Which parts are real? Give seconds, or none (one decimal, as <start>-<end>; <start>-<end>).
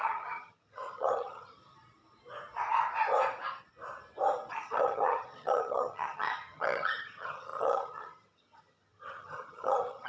1.6-4.5